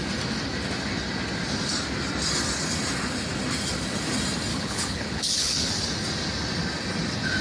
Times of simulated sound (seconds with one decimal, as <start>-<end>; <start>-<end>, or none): 4.5-5.7